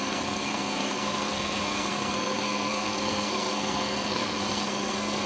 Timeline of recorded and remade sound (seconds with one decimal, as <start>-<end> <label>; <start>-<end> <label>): 0.0-5.3 remade

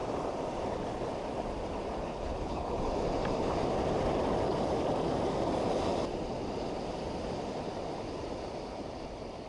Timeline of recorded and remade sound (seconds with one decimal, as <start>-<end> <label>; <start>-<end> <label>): 0.0-2.1 recorded; 2.1-2.8 remade; 2.8-9.5 recorded

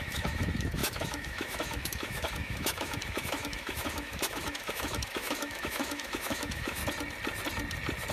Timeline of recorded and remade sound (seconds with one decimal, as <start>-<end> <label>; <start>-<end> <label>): 0.0-6.8 remade; 6.8-8.1 recorded

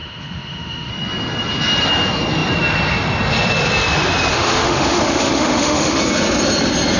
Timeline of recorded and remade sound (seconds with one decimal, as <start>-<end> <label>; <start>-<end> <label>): 0.0-0.9 remade; 0.9-4.3 recorded; 4.3-6.0 remade; 6.0-7.0 recorded